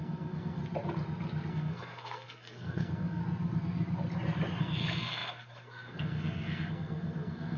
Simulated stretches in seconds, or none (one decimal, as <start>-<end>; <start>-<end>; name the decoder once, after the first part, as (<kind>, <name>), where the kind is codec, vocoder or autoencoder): 0.0-0.6 (codec, SNAC); 1.5-3.2; 4.6-7.6

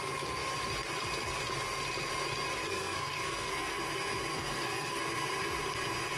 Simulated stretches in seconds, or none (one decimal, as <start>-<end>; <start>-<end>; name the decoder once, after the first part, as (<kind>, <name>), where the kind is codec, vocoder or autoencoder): 2.6-3.8 (codec, SNAC); 4.3-5.0

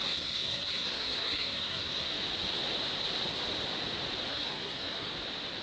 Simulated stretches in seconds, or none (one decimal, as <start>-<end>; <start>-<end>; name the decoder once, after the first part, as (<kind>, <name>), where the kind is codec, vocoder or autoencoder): 0.0-2.1 (codec, SNAC); 4.3-5.1

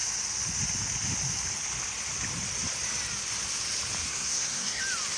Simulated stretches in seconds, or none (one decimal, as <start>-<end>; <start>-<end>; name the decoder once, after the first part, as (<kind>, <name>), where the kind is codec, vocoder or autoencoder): 4.0-4.8 (codec, SNAC)